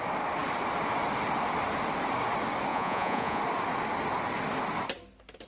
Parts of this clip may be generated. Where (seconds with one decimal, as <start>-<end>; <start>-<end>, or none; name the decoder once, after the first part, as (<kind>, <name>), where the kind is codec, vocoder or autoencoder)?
2.7-3.4 (vocoder, Vocos)